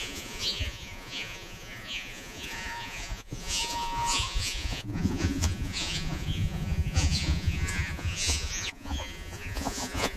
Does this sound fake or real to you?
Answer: fake